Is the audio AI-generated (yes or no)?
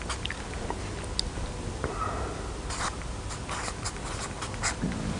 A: no